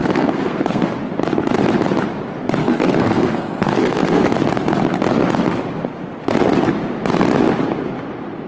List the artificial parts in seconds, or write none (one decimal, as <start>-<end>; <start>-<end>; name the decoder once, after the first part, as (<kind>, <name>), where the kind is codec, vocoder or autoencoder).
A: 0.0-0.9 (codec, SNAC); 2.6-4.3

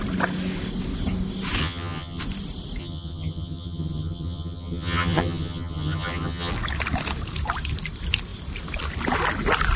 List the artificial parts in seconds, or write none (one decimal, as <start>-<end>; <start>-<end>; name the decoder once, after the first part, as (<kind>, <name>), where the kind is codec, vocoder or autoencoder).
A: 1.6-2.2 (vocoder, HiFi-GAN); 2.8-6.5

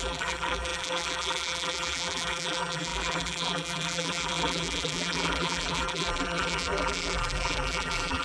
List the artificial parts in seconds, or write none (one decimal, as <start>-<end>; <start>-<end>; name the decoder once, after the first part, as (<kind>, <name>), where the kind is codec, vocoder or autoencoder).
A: 0.0-8.2 (vocoder, BigVGAN v2)